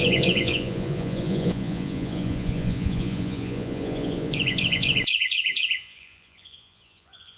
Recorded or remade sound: remade